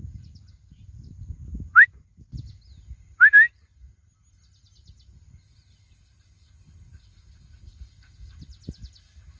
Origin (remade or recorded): recorded